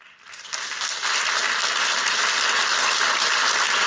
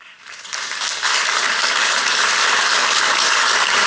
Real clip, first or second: first